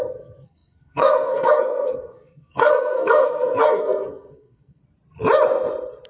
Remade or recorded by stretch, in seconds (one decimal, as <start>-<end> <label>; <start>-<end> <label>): 0.0-4.8 remade; 4.8-6.1 recorded